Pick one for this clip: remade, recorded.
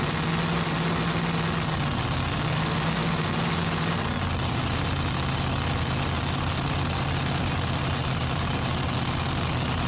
recorded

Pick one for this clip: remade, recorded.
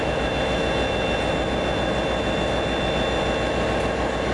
recorded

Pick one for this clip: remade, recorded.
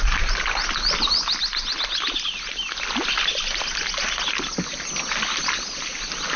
recorded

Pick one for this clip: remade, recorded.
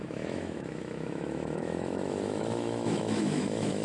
remade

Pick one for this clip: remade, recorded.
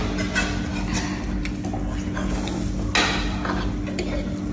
recorded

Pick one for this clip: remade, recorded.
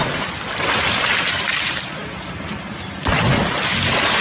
remade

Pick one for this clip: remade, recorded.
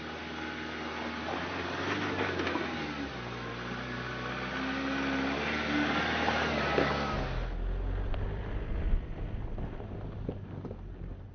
recorded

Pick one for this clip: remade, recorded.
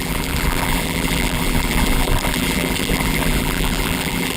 remade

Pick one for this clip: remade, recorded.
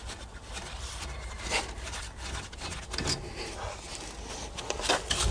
recorded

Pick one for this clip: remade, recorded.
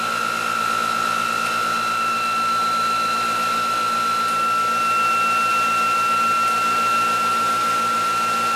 recorded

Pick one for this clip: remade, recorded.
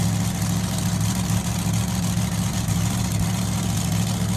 recorded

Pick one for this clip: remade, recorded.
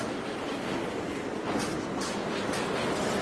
recorded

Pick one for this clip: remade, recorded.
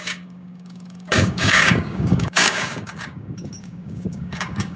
remade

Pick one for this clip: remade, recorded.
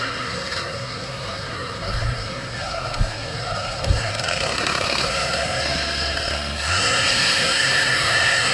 remade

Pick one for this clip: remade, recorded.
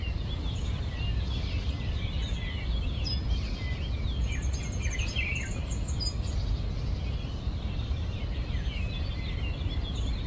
recorded